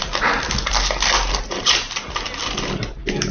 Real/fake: real